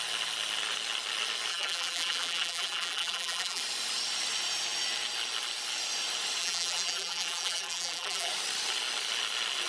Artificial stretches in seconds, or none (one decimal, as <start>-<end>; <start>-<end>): 1.5-3.6; 6.4-8.3